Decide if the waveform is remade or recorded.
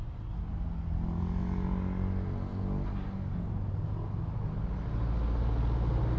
recorded